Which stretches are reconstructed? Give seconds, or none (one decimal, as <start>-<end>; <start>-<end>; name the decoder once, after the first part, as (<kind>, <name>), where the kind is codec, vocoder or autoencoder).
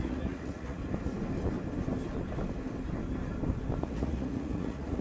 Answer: 0.0-0.8 (vocoder, Vocos); 3.8-5.0